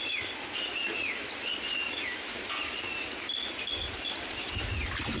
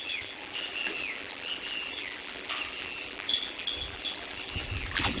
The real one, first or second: first